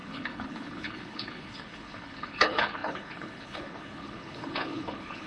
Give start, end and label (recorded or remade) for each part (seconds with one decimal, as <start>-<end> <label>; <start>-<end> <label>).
0.0-5.3 remade